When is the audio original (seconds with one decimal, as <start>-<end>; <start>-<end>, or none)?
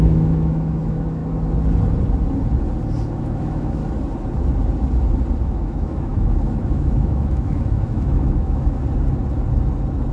1.2-3.2; 3.8-5.4; 8.8-10.1